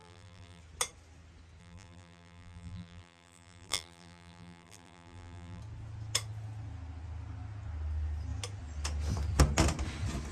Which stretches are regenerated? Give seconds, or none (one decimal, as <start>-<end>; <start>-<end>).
0.0-0.6; 1.6-5.6